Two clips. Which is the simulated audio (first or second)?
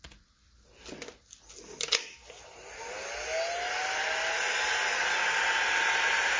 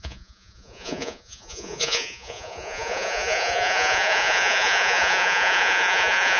second